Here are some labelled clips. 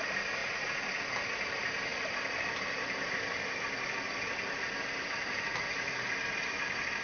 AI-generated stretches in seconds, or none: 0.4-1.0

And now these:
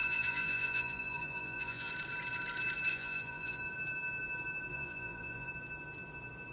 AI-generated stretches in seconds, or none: 0.0-1.9; 2.9-3.6; 4.7-5.5

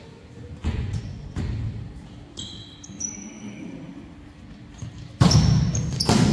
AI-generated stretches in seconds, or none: 0.6-1.4